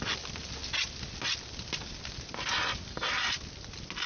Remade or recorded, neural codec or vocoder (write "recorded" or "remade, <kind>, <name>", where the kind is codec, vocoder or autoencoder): recorded